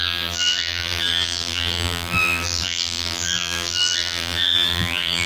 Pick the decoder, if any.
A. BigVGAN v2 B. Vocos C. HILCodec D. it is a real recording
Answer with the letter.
A